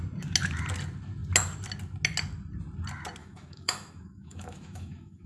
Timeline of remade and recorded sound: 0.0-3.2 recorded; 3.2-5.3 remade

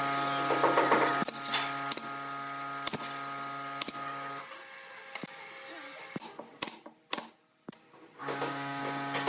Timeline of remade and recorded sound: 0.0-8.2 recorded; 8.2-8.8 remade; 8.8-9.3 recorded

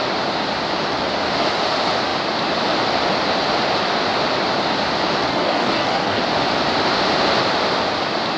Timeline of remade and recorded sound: 0.0-5.3 recorded; 5.3-6.2 remade; 6.2-8.4 recorded

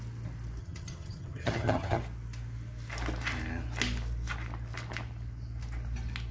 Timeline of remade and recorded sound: 0.0-0.6 recorded; 0.6-2.0 remade; 2.0-6.3 recorded